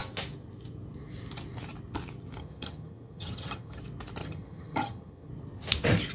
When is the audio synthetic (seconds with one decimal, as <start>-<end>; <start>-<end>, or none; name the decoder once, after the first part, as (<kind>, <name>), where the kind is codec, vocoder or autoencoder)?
2.4-3.8 (vocoder, HiFi-GAN); 4.2-5.3